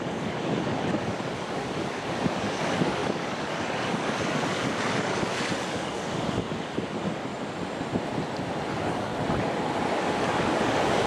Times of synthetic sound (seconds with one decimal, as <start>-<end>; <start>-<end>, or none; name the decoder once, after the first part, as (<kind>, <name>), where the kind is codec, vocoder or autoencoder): 0.0-7.3 (codec, DAC); 8.7-9.1; 10.0-11.1